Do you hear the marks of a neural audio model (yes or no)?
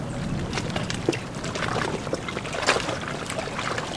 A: no